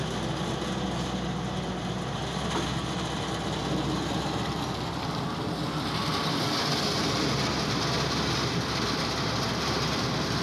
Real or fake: real